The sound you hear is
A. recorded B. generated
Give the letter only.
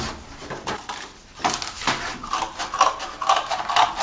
A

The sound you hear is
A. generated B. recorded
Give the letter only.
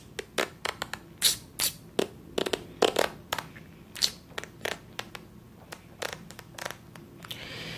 B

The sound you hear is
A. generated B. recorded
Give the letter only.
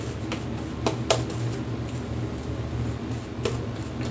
B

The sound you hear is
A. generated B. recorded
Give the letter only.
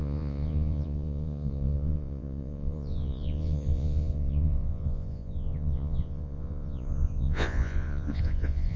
A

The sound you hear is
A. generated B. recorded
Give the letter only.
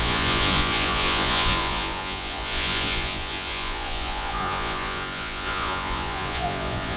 A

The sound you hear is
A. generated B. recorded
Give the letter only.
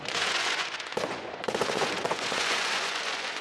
A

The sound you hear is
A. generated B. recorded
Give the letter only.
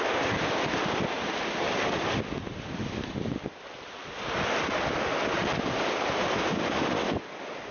B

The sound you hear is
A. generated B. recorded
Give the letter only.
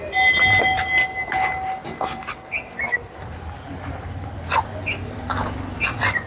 B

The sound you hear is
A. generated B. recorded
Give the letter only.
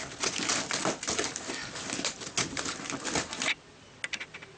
B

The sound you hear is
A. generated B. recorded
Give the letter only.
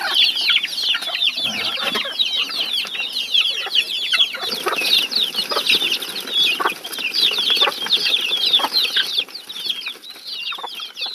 B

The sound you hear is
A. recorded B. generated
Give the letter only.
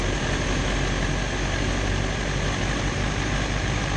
A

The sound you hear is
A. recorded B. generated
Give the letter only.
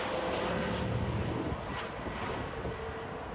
A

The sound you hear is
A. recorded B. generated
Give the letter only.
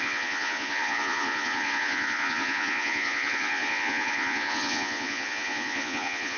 B